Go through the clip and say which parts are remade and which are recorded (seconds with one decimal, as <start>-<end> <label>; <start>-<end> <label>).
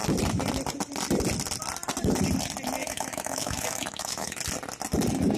0.0-2.8 recorded; 2.8-4.4 remade; 4.4-5.4 recorded